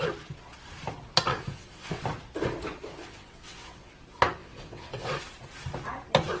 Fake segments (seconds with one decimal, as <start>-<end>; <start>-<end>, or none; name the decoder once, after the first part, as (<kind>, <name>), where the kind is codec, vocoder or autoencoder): 1.3-2.0 (vocoder, WaveNeXt); 3.0-3.9; 4.4-5.1